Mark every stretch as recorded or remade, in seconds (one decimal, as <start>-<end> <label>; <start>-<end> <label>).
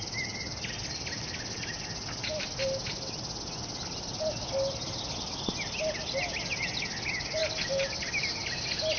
0.0-9.0 recorded